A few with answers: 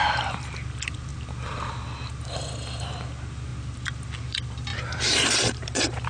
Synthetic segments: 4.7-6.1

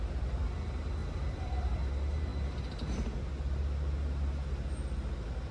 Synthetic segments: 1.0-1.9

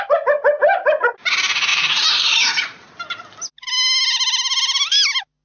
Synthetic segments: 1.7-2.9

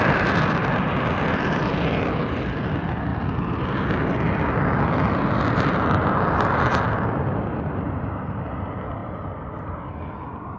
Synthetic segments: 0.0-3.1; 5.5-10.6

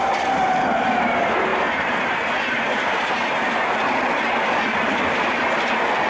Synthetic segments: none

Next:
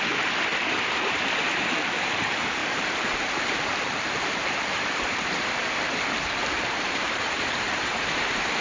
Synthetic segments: 2.6-7.1

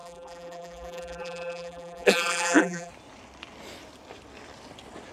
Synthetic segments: 0.0-2.9

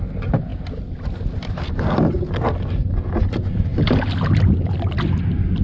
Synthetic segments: none